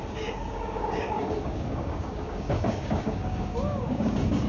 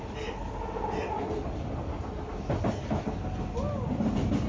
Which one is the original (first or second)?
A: second